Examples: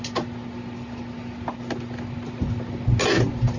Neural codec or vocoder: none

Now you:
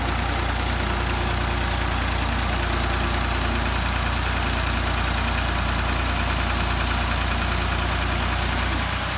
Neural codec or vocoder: none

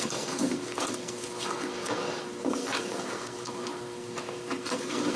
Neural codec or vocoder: codec, SNAC